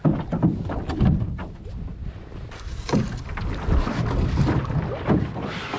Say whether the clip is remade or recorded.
recorded